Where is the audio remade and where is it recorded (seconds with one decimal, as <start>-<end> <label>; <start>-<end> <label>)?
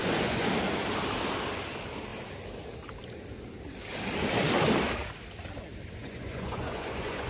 0.0-0.5 remade; 0.5-6.0 recorded; 6.0-7.3 remade